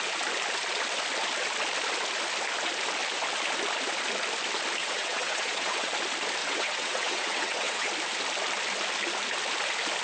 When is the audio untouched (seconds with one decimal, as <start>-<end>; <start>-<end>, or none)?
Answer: 0.0-4.8; 5.9-6.4; 7.9-10.0